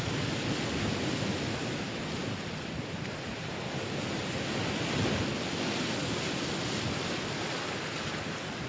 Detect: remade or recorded recorded